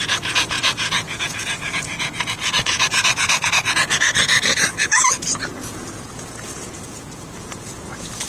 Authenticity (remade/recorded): remade